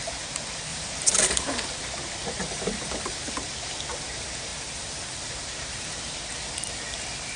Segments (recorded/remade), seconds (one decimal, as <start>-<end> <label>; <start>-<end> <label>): 0.0-0.7 recorded; 0.7-1.2 remade; 1.2-2.4 recorded; 2.4-3.5 remade; 3.5-4.5 recorded; 4.5-5.2 remade; 5.2-7.4 recorded